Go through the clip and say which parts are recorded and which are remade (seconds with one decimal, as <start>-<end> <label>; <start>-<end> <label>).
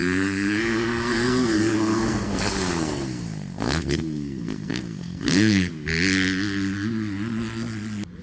0.0-5.7 remade; 5.7-8.2 recorded